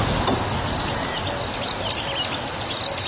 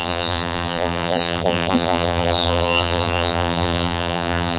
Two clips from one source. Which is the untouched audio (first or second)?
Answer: first